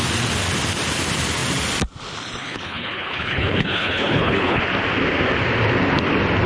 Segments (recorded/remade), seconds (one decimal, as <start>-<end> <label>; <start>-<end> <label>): 0.0-2.4 recorded; 2.4-4.6 remade; 4.6-6.5 recorded